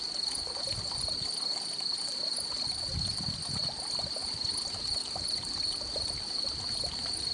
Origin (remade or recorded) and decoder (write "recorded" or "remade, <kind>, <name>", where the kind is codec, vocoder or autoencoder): recorded